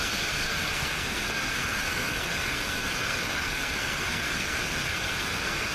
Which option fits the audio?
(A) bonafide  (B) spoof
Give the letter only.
B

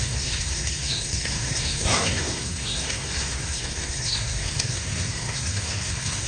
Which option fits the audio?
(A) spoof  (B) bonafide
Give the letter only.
A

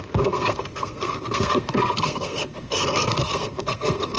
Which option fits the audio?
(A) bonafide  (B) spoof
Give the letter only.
B